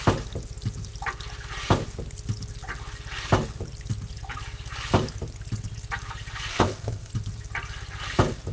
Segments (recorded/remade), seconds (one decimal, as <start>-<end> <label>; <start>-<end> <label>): 0.0-6.5 recorded; 6.5-7.1 remade; 7.1-8.5 recorded